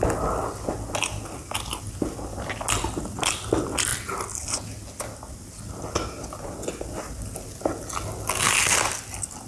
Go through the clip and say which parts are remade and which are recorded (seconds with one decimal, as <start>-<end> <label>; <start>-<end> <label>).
0.0-9.5 recorded